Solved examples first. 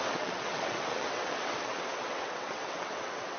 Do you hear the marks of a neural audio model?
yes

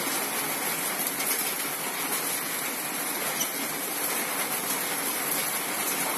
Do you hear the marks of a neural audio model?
no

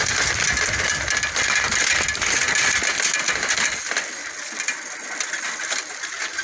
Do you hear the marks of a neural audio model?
no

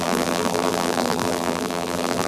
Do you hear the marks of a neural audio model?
yes